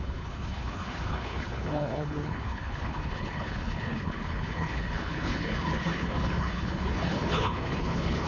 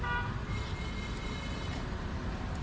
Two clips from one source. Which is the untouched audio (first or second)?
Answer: second